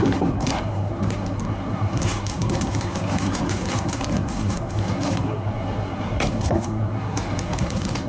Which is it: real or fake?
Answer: fake